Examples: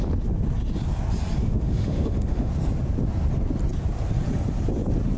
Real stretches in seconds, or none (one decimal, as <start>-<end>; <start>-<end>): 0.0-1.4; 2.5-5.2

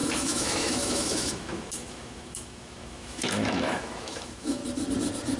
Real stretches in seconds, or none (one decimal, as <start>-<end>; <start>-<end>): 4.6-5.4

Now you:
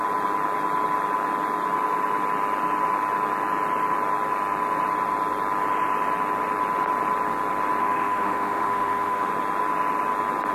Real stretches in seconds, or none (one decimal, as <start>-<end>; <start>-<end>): 0.0-7.8; 9.3-10.5

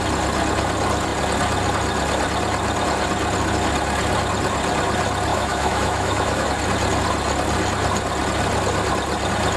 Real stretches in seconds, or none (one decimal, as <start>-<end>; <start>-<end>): 0.0-5.3; 6.5-9.6